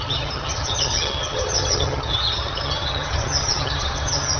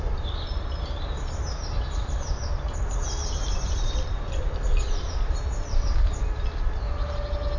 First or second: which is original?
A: second